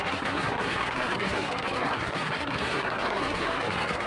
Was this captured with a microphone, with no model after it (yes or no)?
no